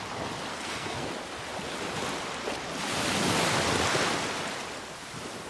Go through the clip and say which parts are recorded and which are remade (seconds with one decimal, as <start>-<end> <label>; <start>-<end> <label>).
0.0-0.5 recorded; 0.5-1.1 remade; 1.1-5.5 recorded